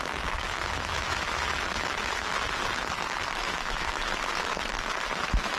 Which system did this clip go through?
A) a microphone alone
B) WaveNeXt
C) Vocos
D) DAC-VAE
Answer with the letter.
D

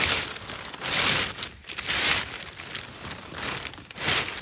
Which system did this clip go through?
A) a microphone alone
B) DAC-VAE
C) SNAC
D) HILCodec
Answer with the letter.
A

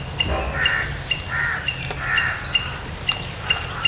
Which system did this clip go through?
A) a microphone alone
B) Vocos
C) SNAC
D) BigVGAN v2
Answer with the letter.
A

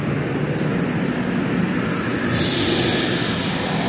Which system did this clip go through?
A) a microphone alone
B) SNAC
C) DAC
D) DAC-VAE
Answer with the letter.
A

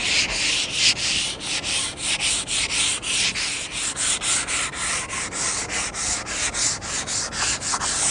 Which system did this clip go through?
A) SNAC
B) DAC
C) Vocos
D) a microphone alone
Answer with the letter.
D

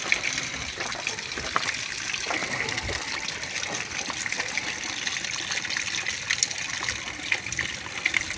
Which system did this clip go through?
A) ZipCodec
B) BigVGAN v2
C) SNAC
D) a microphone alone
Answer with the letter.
D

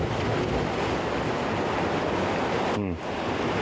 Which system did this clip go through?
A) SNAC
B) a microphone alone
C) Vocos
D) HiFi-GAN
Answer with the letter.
B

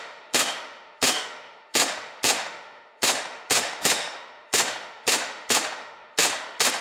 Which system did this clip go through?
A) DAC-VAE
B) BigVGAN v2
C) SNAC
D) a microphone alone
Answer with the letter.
A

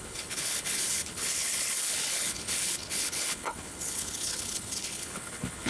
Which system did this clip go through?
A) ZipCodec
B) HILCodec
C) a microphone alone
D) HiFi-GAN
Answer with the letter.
B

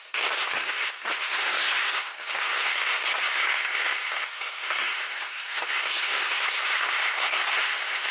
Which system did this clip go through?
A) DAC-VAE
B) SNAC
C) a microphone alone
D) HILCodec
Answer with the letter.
B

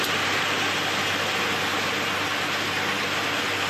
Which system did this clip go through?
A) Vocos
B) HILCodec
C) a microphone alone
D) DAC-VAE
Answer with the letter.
C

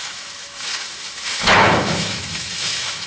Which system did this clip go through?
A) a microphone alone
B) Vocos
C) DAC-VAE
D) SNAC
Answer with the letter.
C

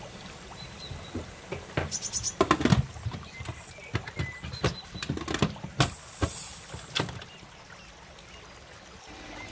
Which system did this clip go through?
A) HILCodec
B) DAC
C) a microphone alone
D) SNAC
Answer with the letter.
C